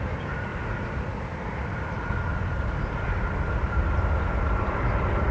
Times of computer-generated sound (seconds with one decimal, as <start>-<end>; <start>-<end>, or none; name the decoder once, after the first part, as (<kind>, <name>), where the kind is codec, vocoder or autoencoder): none